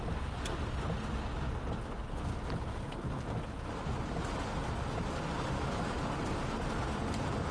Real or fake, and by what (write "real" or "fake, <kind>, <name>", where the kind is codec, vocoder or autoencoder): real